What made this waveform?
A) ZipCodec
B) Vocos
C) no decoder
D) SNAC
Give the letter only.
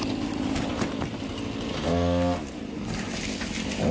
C